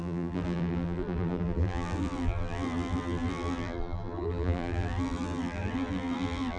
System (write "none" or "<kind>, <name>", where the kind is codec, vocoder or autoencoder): vocoder, BigVGAN v2